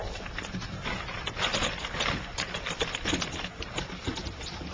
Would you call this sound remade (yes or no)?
no